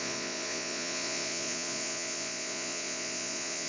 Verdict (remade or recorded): remade